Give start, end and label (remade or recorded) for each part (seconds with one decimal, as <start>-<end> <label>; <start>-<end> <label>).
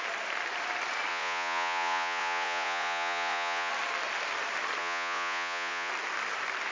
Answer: 0.0-1.1 recorded; 1.1-3.7 remade; 3.7-4.8 recorded; 4.8-5.9 remade; 5.9-6.7 recorded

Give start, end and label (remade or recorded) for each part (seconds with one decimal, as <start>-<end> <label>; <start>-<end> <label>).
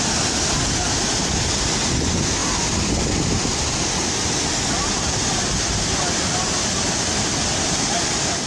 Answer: 0.0-8.5 recorded